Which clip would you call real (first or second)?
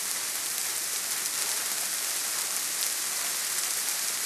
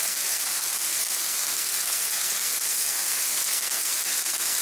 first